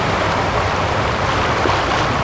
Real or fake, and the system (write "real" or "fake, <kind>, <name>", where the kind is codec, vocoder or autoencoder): real